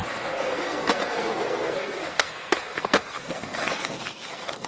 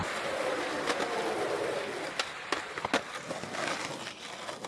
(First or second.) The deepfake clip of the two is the first